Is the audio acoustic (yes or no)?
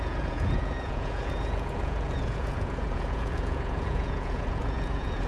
no